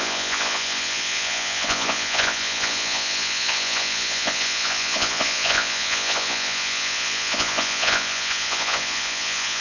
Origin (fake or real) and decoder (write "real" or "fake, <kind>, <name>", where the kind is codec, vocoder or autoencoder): fake, vocoder, Vocos